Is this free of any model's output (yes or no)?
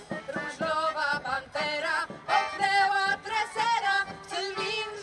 yes